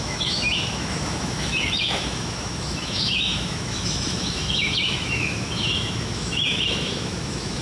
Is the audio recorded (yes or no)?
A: no